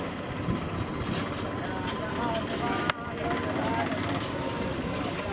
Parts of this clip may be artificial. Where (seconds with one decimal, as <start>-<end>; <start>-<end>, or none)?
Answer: none